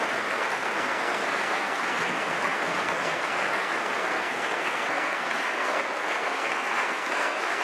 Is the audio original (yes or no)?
no